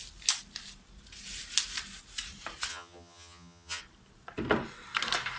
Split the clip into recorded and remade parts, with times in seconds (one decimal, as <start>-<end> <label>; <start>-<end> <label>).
0.0-2.7 recorded; 2.7-3.8 remade; 3.8-5.4 recorded